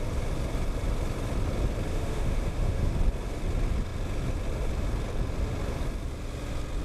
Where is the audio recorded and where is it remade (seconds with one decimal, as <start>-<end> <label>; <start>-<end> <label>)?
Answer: 0.0-1.9 recorded; 1.9-2.9 remade; 2.9-6.8 recorded